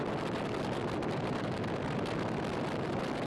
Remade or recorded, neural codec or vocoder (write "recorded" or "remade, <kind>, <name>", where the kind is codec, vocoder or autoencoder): recorded